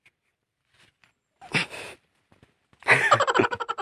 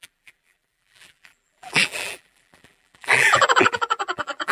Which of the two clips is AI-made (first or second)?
second